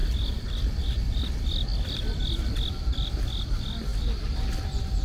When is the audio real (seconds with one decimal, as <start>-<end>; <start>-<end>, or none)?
0.6-1.7; 3.5-5.0